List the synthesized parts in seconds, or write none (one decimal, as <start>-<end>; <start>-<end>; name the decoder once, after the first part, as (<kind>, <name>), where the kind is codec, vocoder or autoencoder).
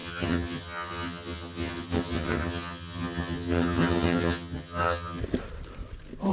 0.0-5.2 (vocoder, HiFi-GAN)